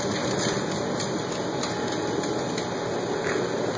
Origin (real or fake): real